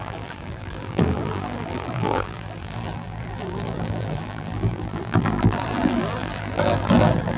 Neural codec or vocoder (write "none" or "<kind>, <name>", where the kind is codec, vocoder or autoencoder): vocoder, BigVGAN v2